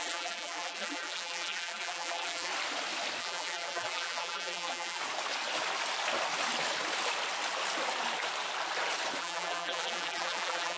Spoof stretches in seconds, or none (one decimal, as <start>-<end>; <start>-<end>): 0.0-2.5; 3.2-5.0; 9.2-10.8